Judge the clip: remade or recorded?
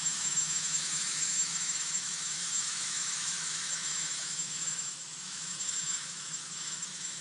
remade